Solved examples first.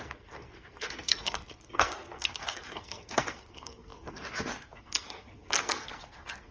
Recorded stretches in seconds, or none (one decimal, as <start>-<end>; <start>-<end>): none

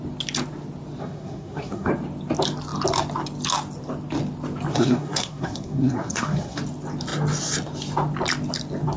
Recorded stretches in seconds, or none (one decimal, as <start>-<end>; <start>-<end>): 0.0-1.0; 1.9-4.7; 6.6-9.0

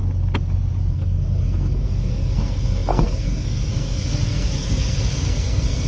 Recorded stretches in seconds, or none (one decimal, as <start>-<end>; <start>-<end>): 0.0-0.9

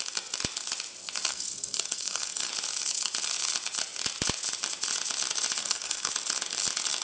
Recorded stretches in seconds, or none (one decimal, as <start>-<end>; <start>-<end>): 0.0-1.3; 2.5-5.6; 6.1-7.0

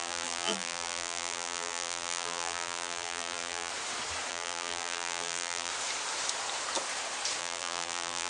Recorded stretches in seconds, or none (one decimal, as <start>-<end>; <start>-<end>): 3.7-4.3; 5.7-7.4

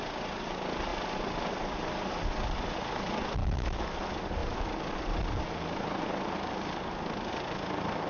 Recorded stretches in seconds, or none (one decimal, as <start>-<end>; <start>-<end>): 0.0-3.4; 4.0-8.1

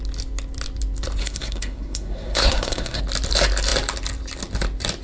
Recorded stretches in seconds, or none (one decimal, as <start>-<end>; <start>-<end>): 0.0-1.2; 3.0-5.0